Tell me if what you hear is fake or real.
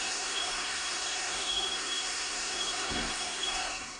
fake